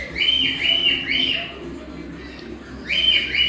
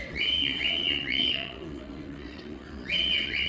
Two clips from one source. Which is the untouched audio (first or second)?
first